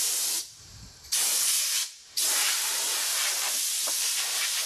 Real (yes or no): no